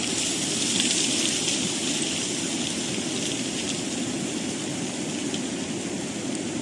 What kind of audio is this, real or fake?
real